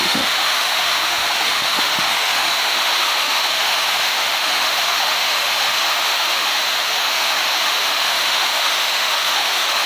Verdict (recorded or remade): remade